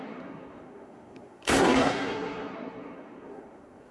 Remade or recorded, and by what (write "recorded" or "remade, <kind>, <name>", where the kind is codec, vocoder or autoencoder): remade, codec, SNAC